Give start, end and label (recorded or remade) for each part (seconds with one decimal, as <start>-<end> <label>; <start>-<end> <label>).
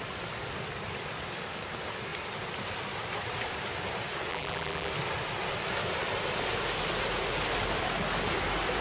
0.0-4.3 recorded; 4.3-4.9 remade; 4.9-8.8 recorded